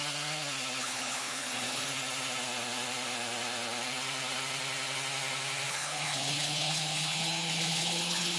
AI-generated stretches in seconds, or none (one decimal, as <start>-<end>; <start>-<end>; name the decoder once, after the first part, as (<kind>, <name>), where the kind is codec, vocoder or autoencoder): 0.8-1.9 (codec, HILCodec); 5.7-8.4